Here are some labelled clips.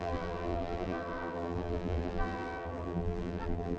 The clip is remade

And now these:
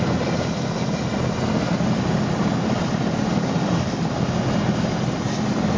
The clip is remade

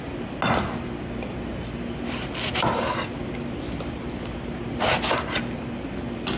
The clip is recorded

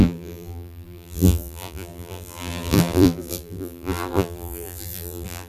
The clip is remade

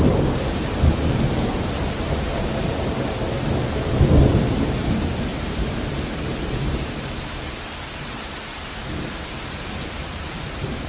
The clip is remade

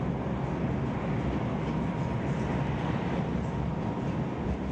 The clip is recorded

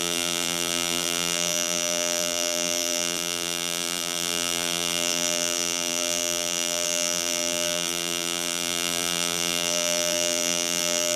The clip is remade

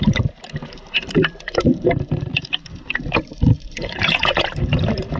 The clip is remade